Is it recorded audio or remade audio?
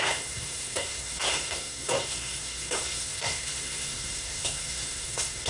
remade